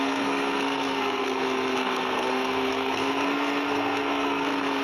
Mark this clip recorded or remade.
remade